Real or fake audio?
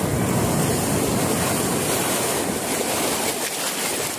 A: real